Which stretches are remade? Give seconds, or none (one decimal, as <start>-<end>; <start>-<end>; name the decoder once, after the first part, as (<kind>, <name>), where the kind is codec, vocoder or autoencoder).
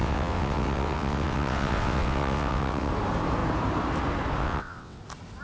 0.0-2.9 (vocoder, WaveNeXt); 4.4-5.0